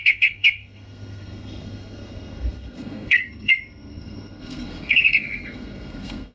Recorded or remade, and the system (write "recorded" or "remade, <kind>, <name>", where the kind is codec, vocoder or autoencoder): remade, codec, SNAC